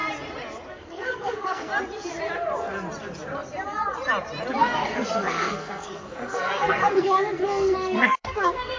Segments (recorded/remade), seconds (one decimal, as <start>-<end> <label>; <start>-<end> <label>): 0.0-0.7 recorded; 0.7-1.7 remade; 1.7-4.6 recorded; 4.6-8.8 remade